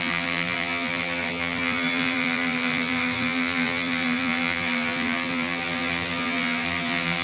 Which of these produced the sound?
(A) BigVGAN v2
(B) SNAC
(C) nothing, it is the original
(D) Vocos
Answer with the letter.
A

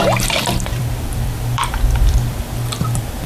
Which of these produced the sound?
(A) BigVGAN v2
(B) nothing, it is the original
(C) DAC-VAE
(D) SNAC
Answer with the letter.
A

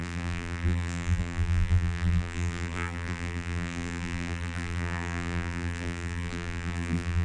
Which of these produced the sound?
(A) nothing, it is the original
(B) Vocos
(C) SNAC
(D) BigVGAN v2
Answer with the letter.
D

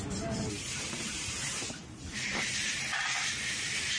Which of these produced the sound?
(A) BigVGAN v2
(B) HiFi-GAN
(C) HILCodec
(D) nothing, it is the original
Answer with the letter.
A